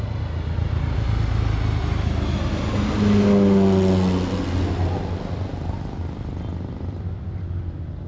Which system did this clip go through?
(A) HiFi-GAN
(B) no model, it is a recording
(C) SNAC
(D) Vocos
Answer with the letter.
B